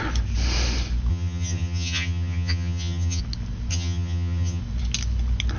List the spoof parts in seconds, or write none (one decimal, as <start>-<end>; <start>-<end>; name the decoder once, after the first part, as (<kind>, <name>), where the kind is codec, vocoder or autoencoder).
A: 1.1-3.2 (vocoder, HiFi-GAN); 3.7-4.6